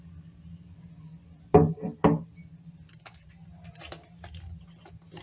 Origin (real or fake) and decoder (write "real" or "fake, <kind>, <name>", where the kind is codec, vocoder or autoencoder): real